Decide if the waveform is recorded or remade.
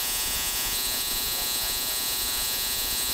remade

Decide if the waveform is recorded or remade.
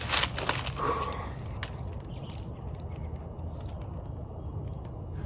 recorded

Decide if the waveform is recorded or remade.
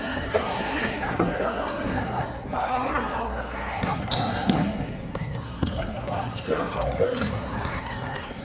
remade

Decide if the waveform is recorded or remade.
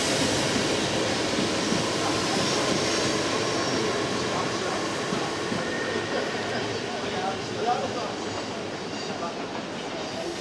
recorded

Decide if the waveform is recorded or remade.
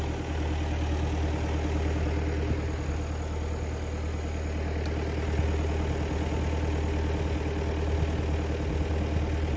recorded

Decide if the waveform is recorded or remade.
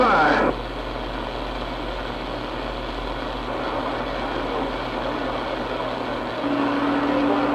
recorded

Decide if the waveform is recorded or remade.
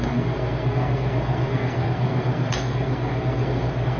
remade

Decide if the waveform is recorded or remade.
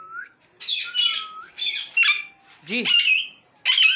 recorded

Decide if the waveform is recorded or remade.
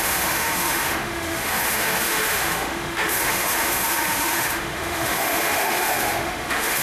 remade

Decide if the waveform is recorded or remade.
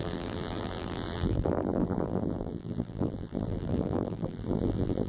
remade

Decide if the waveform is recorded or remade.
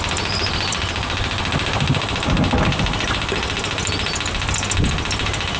recorded